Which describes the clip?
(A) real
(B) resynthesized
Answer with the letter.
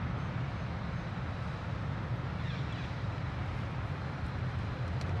B